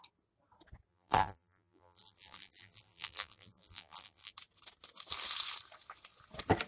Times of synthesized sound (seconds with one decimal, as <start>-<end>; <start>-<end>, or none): 0.9-4.3